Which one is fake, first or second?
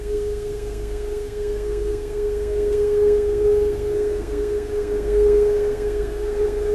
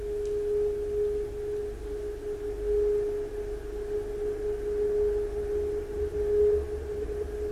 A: first